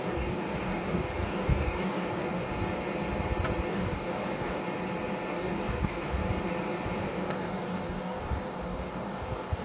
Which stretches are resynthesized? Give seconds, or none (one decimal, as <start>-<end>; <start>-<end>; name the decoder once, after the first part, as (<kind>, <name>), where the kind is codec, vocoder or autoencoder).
0.0-2.5 (codec, DAC); 3.7-4.6; 5.3-6.2; 7.0-9.6